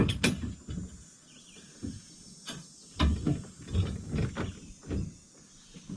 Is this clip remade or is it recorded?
recorded